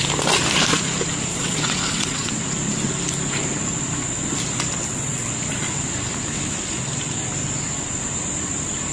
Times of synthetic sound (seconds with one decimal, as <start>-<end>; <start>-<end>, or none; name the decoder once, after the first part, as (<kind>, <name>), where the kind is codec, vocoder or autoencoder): 1.3-2.3 (vocoder, WaveNeXt); 4.8-5.3